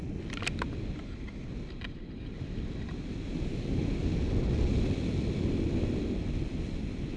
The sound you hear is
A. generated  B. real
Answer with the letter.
B